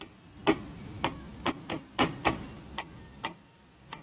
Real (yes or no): yes